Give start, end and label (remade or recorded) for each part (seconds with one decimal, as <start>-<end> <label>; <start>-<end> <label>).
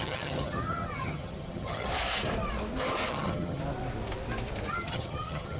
0.0-1.9 remade; 1.9-3.1 recorded; 3.1-3.6 remade; 3.6-4.7 recorded; 4.7-5.6 remade